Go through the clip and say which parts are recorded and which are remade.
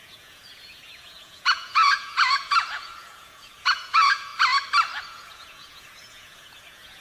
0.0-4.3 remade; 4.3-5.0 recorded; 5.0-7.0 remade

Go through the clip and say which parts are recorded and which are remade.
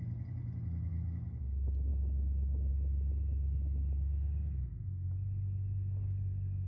0.0-6.7 recorded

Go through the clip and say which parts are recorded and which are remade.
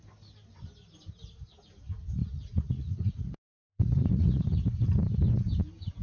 0.0-2.2 recorded; 2.2-4.4 remade; 4.4-6.0 recorded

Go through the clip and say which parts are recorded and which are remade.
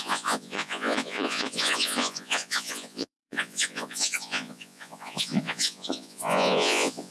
0.0-7.1 remade